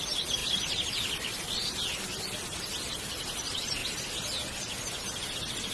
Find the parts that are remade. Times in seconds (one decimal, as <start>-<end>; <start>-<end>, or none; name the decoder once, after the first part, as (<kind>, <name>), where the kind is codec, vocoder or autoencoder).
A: none